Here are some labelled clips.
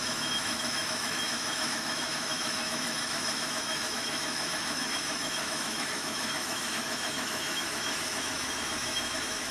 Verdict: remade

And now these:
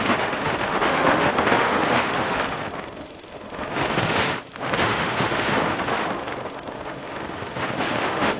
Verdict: remade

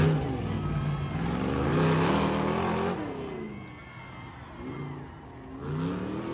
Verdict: recorded